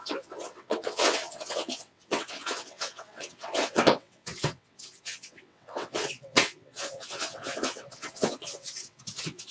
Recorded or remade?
remade